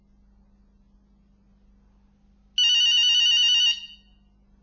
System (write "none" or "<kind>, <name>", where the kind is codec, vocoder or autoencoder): none